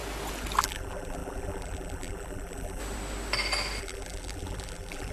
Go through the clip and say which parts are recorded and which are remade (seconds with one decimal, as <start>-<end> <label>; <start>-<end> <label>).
0.0-0.6 recorded; 0.6-2.8 remade; 2.8-3.8 recorded; 3.8-5.1 remade